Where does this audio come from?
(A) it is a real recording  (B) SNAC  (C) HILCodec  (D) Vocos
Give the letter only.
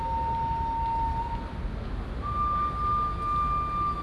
A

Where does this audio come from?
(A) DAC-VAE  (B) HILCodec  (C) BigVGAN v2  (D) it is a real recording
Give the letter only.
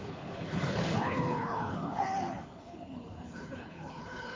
B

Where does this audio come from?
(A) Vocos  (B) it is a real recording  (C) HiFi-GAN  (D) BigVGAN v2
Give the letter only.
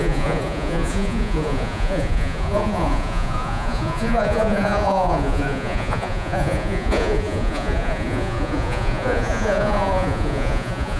A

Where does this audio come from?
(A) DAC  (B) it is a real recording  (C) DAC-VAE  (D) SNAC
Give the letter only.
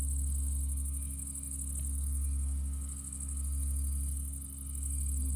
B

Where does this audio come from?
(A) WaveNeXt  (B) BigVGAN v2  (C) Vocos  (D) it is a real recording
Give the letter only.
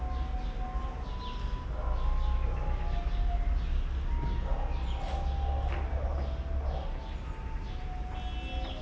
D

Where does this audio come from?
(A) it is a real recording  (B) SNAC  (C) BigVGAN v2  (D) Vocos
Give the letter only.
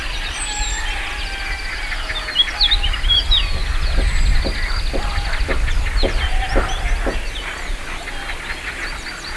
A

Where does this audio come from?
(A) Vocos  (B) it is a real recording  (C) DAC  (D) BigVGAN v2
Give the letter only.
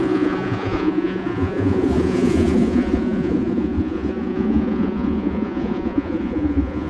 A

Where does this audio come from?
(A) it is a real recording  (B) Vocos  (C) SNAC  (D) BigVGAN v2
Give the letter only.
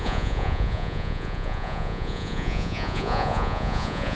B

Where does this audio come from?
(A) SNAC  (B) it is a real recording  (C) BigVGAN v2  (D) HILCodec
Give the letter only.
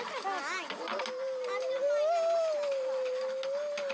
B